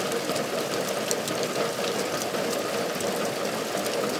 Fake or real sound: real